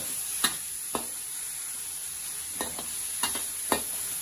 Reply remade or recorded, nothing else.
recorded